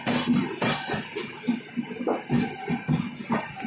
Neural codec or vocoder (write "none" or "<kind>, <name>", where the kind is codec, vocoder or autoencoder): none